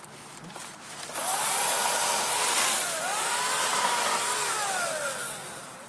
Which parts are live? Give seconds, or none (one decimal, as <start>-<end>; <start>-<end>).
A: 0.0-1.3; 2.3-5.9